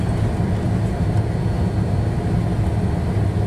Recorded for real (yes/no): yes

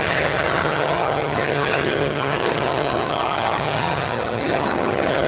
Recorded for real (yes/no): no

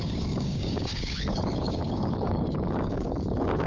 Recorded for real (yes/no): no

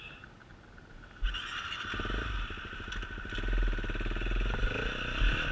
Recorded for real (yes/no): yes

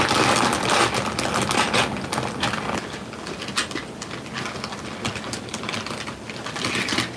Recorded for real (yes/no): yes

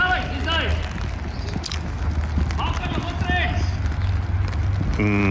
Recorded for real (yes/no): yes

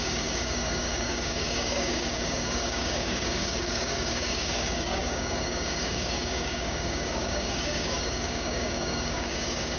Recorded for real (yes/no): no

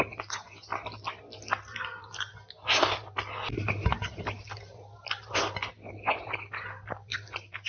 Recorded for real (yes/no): yes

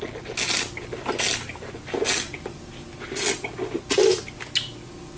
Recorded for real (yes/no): yes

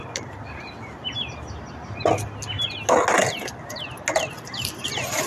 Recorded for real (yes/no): yes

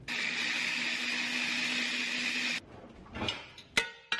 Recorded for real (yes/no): yes